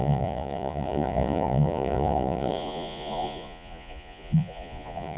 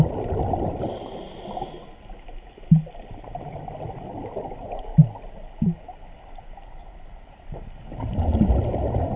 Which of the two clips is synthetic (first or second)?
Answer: first